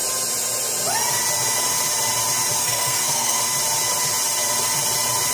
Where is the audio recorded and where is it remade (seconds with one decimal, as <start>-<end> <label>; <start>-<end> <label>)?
0.0-2.6 recorded; 2.6-3.4 remade; 3.4-5.3 recorded